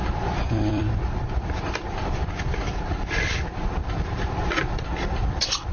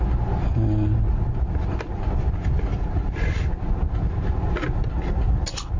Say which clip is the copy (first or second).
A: first